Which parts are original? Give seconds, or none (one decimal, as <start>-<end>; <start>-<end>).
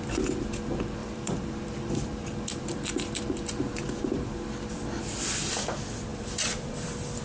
0.0-1.0; 5.0-6.1